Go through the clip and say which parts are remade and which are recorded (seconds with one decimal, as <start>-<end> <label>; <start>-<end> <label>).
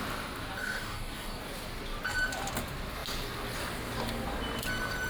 0.0-0.6 recorded; 0.6-1.4 remade; 1.4-5.1 recorded